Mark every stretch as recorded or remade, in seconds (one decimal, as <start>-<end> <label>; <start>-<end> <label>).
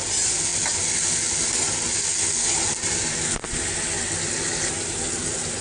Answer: 0.0-5.6 recorded